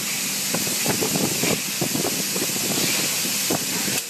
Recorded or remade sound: recorded